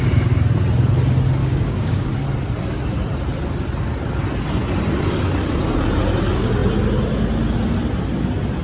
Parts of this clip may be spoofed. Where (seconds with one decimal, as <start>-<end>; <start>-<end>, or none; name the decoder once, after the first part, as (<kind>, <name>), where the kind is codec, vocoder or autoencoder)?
1.4-2.1 (codec, DAC)